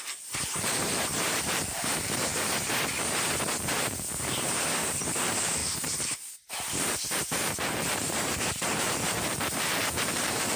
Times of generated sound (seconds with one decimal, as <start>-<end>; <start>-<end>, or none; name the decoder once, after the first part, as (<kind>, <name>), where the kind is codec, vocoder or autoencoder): 0.0-2.3 (vocoder, BigVGAN v2); 4.9-10.6